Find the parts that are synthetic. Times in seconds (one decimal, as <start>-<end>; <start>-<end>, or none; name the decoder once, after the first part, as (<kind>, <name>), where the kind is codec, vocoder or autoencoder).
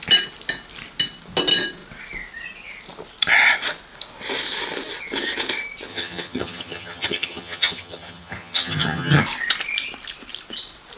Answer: 5.9-9.2 (vocoder, HiFi-GAN)